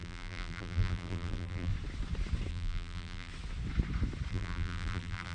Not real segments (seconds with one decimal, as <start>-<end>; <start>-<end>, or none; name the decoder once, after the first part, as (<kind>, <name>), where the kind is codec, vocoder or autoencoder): 0.0-1.7 (vocoder, BigVGAN v2); 2.5-3.3; 4.3-5.3